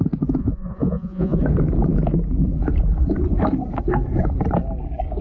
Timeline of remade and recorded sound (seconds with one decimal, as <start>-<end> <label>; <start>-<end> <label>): 0.0-0.4 recorded; 0.4-1.4 remade; 1.4-5.2 recorded